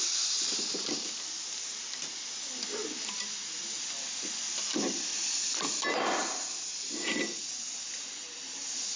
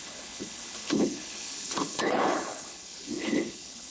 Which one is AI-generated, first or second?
second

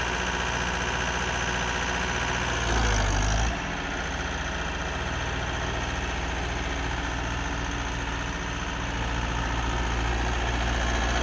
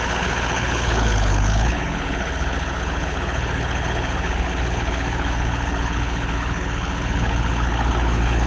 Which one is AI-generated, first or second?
second